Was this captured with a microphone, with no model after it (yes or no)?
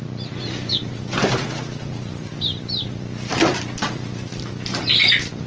yes